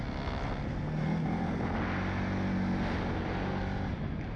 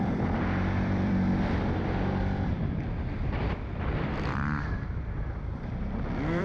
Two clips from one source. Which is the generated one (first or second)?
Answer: second